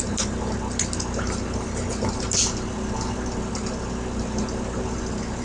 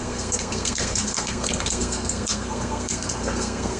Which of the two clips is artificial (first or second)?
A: second